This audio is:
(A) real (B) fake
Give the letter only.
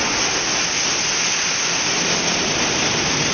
A